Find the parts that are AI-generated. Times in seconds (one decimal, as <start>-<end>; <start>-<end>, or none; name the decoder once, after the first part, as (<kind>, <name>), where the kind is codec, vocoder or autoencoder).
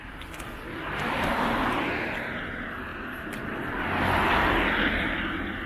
none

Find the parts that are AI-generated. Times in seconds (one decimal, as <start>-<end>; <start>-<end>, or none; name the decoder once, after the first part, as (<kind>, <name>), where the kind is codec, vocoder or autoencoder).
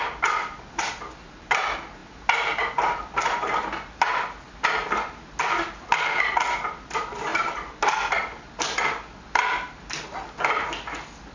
7.3-8.1 (vocoder, BigVGAN v2)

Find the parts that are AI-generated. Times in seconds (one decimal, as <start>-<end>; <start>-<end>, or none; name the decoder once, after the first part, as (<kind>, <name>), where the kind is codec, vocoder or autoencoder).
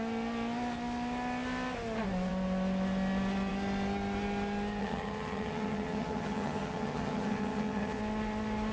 4.8-8.0 (vocoder, HiFi-GAN)